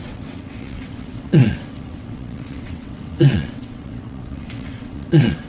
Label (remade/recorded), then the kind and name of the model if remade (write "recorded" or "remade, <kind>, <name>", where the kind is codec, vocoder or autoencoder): remade, vocoder, WaveNeXt